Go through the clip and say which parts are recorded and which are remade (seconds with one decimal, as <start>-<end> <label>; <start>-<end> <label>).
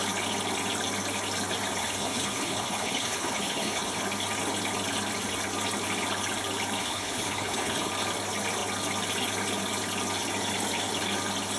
0.0-1.8 recorded; 1.8-4.0 remade; 4.0-6.8 recorded; 6.8-7.9 remade; 7.9-11.6 recorded